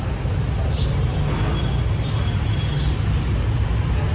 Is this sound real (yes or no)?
yes